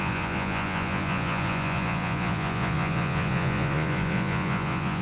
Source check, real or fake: fake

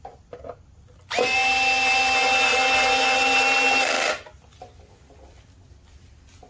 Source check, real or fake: real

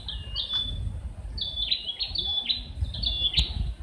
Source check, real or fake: real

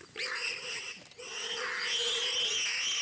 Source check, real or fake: real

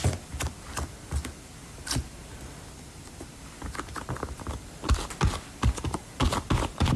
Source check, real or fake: real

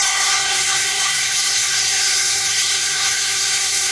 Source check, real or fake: fake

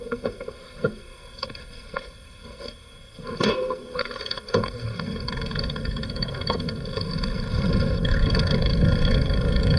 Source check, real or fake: fake